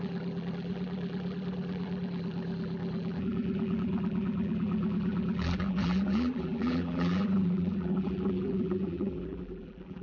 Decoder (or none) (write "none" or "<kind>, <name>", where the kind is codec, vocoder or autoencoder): vocoder, BigVGAN v2